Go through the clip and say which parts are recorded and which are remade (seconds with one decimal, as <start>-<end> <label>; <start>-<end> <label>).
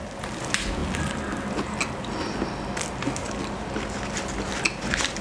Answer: 0.0-5.2 recorded